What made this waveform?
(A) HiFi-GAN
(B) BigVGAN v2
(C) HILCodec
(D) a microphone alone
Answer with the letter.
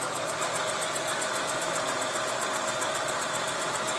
D